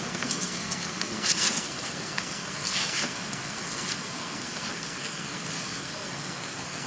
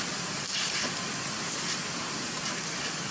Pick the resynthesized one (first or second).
first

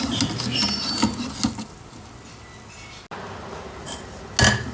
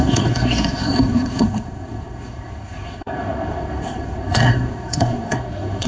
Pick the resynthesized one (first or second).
second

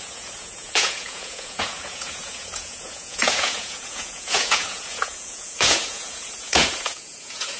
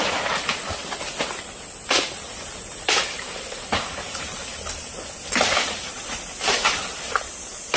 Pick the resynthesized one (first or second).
first